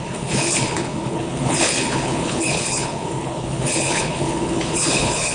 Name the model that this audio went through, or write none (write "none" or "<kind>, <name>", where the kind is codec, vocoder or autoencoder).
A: codec, HILCodec